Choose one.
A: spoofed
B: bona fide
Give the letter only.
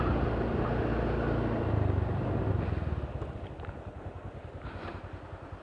B